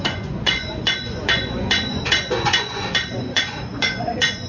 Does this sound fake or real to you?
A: fake